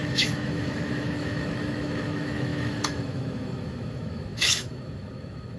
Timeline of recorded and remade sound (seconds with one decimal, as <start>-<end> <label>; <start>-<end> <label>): 0.0-5.6 remade